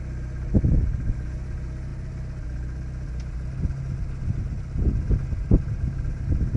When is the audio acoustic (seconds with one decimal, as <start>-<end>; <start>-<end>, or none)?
0.0-6.6